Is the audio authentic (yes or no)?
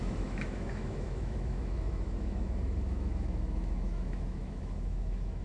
no